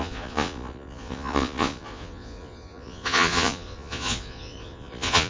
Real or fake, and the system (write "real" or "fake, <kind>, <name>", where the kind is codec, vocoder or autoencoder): fake, vocoder, Vocos